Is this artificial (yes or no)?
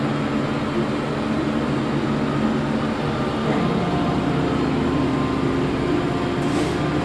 no